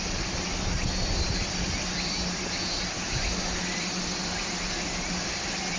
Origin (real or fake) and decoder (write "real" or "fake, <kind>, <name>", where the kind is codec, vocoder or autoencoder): real